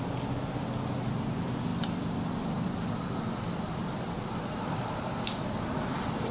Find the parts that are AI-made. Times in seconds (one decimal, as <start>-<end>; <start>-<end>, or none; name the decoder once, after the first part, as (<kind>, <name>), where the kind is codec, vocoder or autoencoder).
1.7-4.1 (vocoder, BigVGAN v2)